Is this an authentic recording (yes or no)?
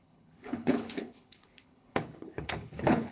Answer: no